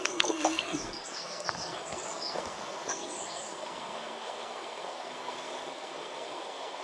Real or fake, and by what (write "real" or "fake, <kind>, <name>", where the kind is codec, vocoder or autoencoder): fake, codec, SNAC